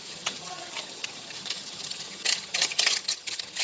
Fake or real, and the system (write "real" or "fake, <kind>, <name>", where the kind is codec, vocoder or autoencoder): fake, vocoder, HiFi-GAN